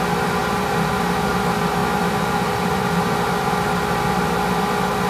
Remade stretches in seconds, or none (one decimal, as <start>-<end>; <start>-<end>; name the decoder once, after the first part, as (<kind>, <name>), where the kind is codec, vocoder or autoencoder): 0.4-1.3 (vocoder, BigVGAN v2)